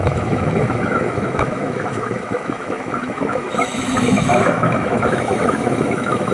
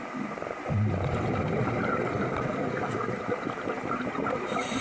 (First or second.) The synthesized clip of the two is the first